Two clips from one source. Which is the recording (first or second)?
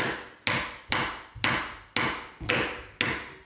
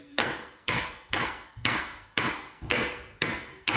first